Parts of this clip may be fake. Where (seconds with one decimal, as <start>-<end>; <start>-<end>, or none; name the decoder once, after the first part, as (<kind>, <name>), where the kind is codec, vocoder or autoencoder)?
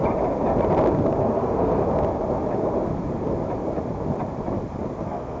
1.2-1.8 (codec, SNAC); 5.0-5.4